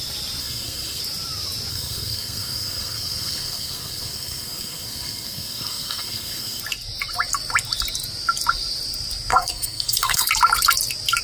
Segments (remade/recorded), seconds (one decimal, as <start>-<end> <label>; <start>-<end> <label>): 0.0-0.4 recorded; 0.4-1.0 remade; 1.0-1.7 recorded; 1.7-6.6 remade; 6.6-9.3 recorded; 9.3-10.3 remade; 10.3-11.2 recorded